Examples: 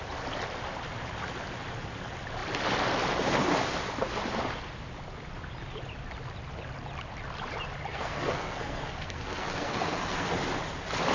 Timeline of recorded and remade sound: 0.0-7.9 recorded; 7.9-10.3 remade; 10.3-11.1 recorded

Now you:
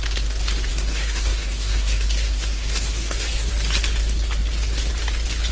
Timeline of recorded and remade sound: 0.0-0.7 recorded; 0.7-3.5 remade; 3.5-5.5 recorded

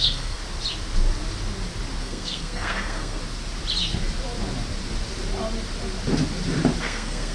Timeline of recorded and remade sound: 0.0-0.4 remade; 0.4-2.0 recorded; 2.0-3.2 remade; 3.2-6.8 recorded; 6.8-7.3 remade

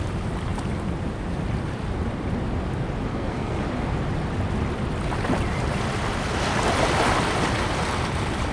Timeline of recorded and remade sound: 0.0-3.1 recorded; 3.1-3.6 remade; 3.6-8.5 recorded

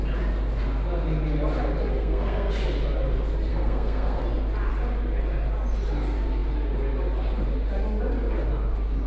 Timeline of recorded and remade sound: 0.0-1.9 recorded; 1.9-2.5 remade; 2.5-3.5 recorded; 3.5-4.2 remade; 4.2-9.1 recorded